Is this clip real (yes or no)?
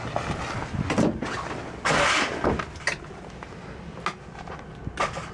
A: yes